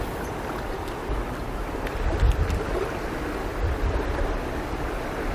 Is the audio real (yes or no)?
yes